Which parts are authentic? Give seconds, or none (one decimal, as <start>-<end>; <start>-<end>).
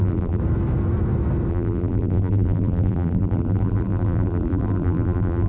0.4-1.5